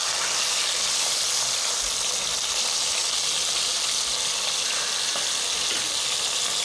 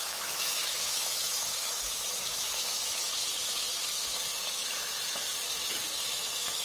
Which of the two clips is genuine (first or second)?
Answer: first